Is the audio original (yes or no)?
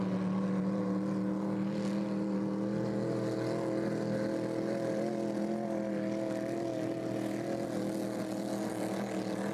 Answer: yes